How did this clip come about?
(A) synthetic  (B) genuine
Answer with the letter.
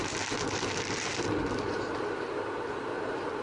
B